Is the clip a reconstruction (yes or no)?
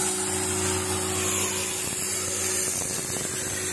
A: no